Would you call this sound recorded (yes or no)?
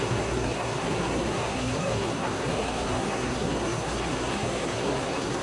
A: no